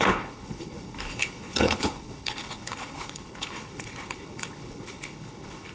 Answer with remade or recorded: remade